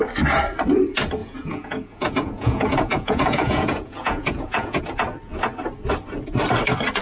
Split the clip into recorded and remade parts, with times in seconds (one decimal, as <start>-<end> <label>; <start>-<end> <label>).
0.0-1.2 recorded; 1.2-4.8 remade; 4.8-7.0 recorded